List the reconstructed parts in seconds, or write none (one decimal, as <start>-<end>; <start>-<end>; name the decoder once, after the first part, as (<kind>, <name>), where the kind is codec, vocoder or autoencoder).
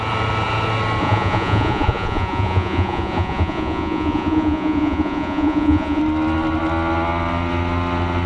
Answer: 1.0-6.0 (vocoder, Vocos)